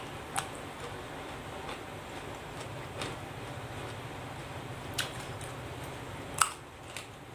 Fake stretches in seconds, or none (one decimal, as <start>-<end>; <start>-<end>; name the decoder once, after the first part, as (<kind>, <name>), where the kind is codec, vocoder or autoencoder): 4.7-5.3 (vocoder, BigVGAN v2)